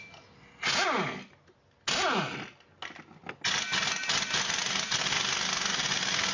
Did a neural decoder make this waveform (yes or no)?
no